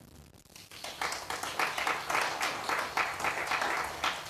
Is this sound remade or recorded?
recorded